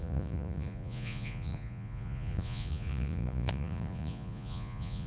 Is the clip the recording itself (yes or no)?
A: no